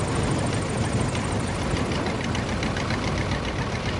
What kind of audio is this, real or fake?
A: real